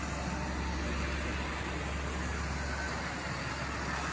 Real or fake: real